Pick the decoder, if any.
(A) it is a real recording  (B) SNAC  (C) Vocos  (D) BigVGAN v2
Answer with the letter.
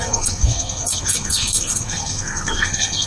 B